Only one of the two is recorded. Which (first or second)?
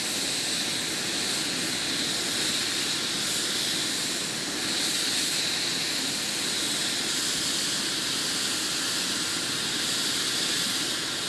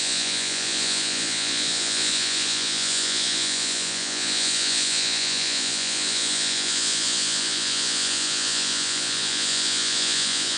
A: first